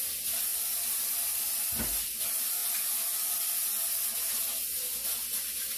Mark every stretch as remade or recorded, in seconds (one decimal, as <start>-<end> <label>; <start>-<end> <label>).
0.0-5.8 recorded